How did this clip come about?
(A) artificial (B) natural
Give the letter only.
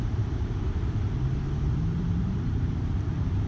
A